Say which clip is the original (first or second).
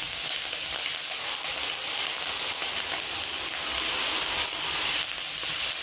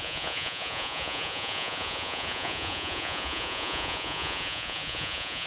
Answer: first